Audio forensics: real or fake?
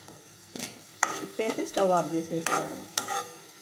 fake